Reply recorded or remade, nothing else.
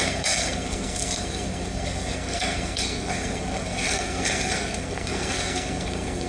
remade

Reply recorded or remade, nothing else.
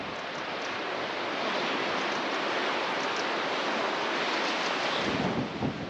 recorded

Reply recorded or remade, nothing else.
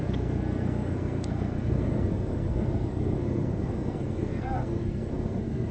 remade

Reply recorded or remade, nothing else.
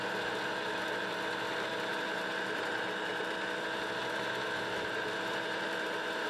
remade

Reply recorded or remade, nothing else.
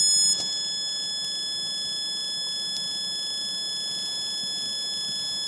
recorded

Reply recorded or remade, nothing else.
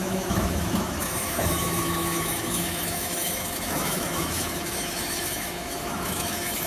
remade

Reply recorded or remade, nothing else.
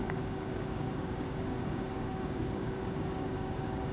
remade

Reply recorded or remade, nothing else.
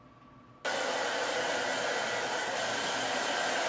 recorded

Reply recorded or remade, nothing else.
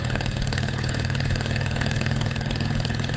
remade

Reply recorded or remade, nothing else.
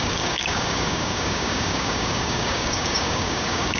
remade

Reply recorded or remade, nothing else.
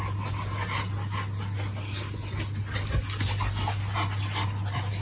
recorded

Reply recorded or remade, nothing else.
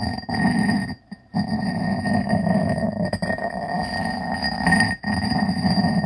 recorded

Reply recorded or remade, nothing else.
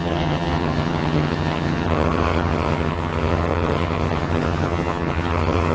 remade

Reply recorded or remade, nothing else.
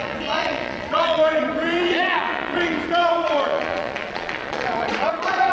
remade